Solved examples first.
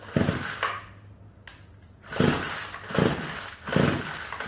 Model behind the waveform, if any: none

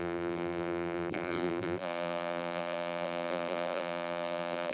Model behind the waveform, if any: vocoder, BigVGAN v2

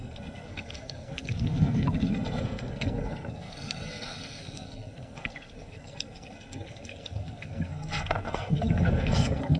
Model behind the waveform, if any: codec, SNAC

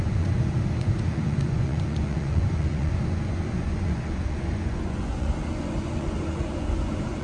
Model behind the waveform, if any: vocoder, Vocos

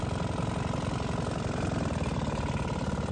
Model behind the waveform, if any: none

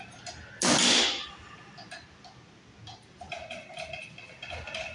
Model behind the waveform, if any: none